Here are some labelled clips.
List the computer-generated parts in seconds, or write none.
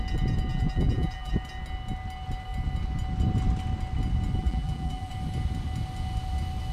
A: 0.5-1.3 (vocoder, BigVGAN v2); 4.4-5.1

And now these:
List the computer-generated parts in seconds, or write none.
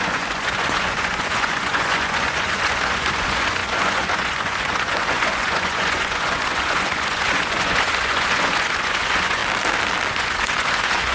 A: 0.0-9.4 (vocoder, Vocos); 10.1-11.1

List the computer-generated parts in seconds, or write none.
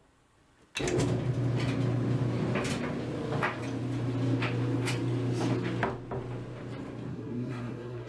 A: 7.1-8.1 (codec, SNAC)